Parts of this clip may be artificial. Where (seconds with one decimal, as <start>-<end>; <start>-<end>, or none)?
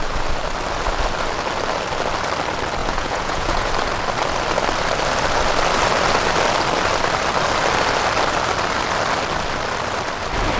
2.8-3.7